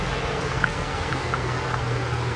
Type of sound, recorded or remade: remade